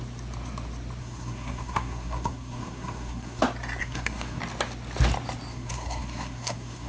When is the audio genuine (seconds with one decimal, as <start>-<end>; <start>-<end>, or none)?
0.0-1.0; 3.4-3.8; 4.4-5.5